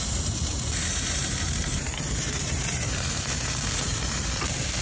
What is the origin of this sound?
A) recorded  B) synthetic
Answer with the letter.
B